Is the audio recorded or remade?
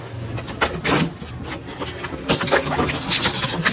recorded